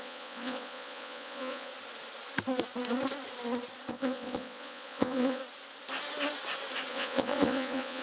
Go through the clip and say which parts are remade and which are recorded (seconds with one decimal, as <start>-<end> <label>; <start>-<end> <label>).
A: 0.0-1.7 remade; 1.7-3.9 recorded; 3.9-5.4 remade; 5.4-6.9 recorded; 6.9-8.0 remade